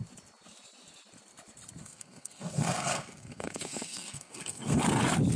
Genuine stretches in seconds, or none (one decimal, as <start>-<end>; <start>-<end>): 0.0-1.8; 5.0-5.4